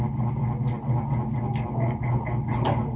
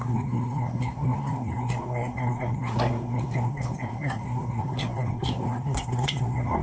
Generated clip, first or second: second